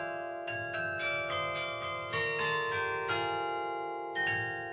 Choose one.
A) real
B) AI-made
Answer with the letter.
A